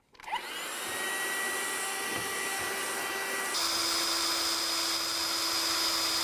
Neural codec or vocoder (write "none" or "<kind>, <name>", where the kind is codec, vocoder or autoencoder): none